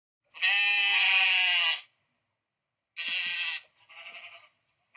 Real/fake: real